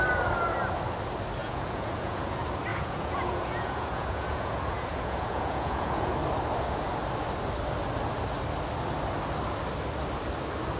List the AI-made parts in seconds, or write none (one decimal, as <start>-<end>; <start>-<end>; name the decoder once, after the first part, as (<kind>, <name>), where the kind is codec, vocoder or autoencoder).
1.4-2.3 (vocoder, Vocos); 2.7-6.1